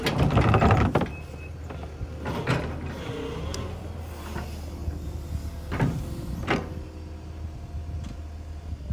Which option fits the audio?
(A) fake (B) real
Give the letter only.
B